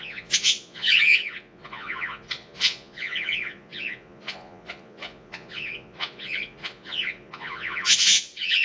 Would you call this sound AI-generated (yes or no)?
yes